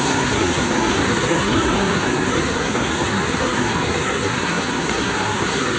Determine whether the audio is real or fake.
fake